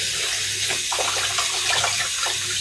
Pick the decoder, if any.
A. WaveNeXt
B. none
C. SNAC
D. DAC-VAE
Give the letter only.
B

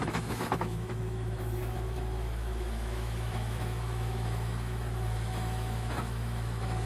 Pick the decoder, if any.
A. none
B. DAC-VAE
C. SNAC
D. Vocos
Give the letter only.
B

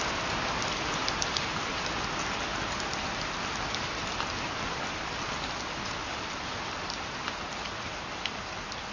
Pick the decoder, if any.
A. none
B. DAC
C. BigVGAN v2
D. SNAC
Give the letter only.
A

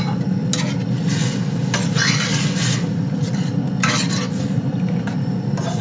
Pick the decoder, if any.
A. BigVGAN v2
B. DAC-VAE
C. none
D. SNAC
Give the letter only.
C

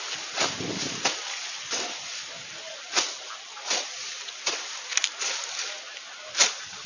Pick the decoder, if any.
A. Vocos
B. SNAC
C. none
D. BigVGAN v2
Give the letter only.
C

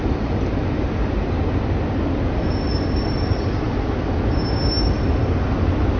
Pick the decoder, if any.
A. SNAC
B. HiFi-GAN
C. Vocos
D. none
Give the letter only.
D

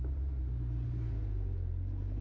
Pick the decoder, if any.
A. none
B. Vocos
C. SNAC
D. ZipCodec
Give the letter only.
A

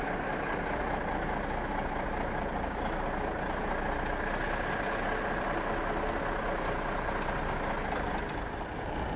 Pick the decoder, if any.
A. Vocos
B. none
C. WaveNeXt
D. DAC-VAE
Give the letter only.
B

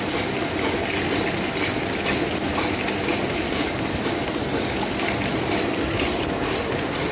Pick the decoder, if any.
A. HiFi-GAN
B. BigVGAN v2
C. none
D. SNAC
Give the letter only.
C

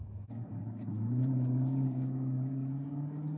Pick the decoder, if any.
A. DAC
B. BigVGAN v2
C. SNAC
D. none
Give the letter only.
A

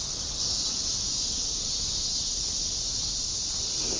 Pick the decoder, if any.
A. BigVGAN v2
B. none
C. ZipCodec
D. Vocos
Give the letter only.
B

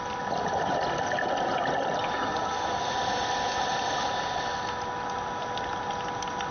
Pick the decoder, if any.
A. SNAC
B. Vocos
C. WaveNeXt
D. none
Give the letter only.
D